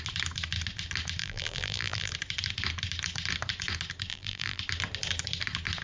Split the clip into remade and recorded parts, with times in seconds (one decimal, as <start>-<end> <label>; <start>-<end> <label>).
0.0-1.2 recorded; 1.2-2.1 remade; 2.1-4.1 recorded; 4.1-4.6 remade; 4.6-5.8 recorded